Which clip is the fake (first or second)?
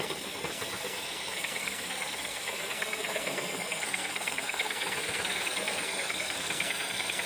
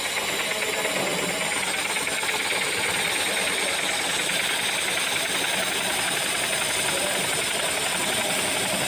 first